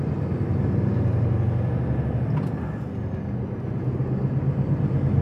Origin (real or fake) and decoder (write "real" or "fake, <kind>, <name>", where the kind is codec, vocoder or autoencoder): real